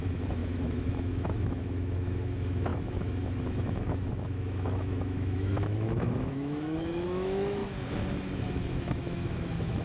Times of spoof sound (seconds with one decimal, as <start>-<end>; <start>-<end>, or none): 0.0-7.6; 8.5-9.8